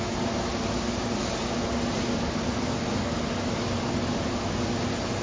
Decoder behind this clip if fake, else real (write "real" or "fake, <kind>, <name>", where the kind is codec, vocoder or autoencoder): real